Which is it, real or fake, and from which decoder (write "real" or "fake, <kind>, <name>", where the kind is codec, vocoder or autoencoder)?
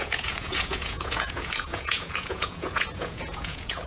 fake, vocoder, Vocos